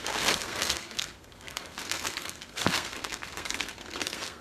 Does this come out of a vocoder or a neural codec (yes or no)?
yes